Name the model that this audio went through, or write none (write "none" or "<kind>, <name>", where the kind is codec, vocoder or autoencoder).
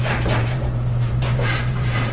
vocoder, BigVGAN v2